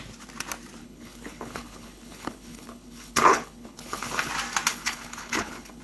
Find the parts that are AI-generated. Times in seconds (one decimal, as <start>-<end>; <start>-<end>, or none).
0.8-4.3; 4.7-5.8